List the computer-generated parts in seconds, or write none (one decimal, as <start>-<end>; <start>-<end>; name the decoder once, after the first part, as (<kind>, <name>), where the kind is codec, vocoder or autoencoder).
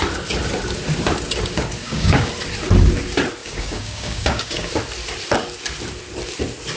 1.8-2.3 (codec, DAC); 3.4-4.7